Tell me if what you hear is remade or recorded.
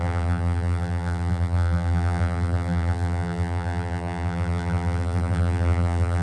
remade